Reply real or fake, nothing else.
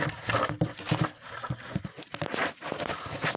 real